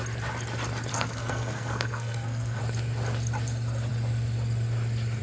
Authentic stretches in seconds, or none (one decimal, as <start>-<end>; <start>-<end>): 0.0-0.9; 2.6-5.2